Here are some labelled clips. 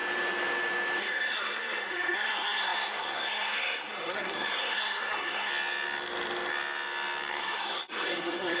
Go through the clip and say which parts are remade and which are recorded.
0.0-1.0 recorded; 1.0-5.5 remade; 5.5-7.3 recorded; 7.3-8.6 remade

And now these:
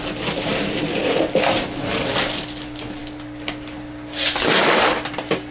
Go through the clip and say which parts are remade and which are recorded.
0.0-5.5 recorded

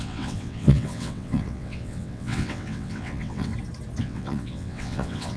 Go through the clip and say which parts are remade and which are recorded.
0.0-3.5 remade; 3.5-4.0 recorded; 4.0-5.4 remade

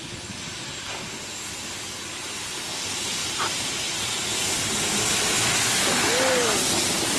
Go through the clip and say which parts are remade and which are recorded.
0.0-7.2 recorded

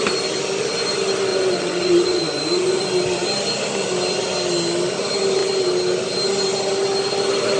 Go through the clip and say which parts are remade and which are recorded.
0.0-1.3 recorded; 1.3-2.8 remade; 2.8-7.6 recorded